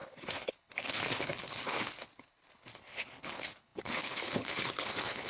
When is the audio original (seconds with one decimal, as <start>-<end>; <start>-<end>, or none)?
none